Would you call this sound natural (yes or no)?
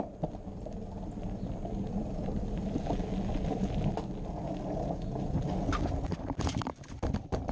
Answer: yes